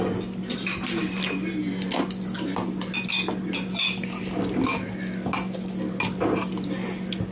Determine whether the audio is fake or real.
real